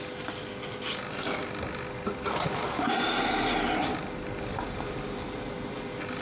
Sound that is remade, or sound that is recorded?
recorded